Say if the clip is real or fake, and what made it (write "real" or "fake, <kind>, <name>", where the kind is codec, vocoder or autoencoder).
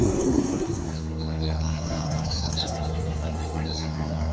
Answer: fake, codec, SNAC